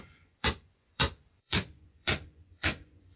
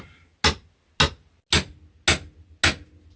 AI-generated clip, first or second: first